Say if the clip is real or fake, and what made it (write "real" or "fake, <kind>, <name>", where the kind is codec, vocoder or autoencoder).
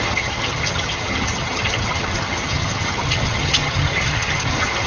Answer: fake, vocoder, HiFi-GAN